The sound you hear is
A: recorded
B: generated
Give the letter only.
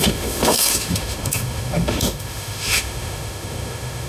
B